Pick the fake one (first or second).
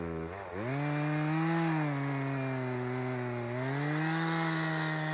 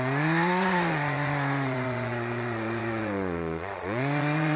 second